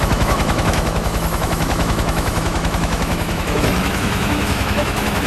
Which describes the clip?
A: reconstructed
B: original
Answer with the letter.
A